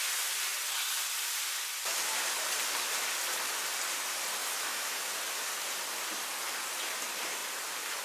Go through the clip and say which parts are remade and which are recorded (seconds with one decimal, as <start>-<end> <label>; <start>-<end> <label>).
0.0-4.4 recorded; 4.4-5.1 remade; 5.1-8.0 recorded